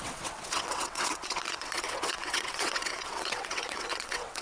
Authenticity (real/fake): fake